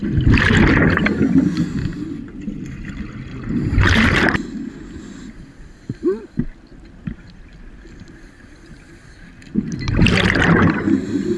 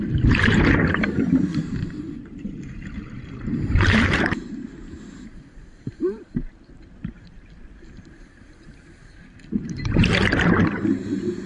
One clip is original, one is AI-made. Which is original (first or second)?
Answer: first